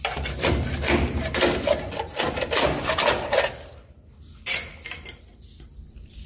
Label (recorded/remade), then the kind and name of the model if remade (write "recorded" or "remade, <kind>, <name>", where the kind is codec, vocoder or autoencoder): remade, vocoder, BigVGAN v2